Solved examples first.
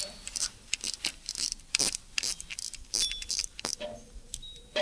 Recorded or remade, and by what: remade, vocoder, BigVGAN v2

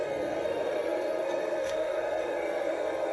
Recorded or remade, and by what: remade, codec, SNAC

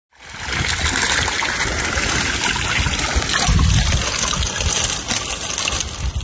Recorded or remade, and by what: recorded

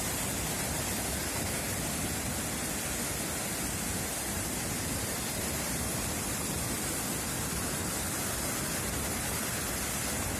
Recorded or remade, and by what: recorded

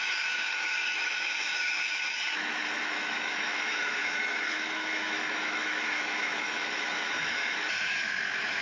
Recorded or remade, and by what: remade, autoencoder, DAC-VAE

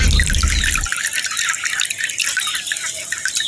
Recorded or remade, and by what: recorded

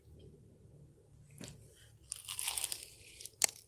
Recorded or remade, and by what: remade, vocoder, BigVGAN v2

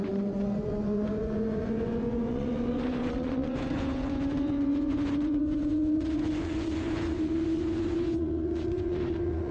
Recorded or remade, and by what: remade, vocoder, Vocos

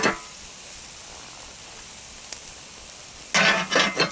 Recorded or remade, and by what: recorded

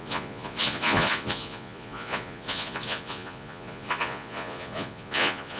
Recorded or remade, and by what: remade, vocoder, Vocos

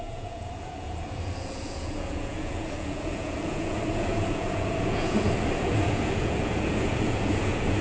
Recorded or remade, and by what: remade, vocoder, Vocos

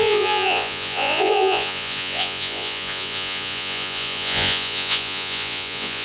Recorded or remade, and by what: remade, vocoder, Vocos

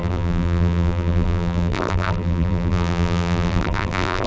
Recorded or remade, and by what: remade, vocoder, BigVGAN v2